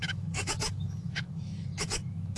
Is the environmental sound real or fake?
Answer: fake